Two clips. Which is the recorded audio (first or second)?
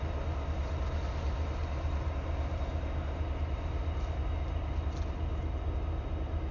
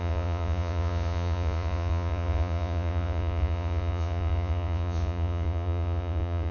first